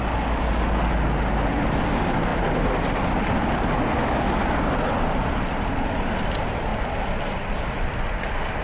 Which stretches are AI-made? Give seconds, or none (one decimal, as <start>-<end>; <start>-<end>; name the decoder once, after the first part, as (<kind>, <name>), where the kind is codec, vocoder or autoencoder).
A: none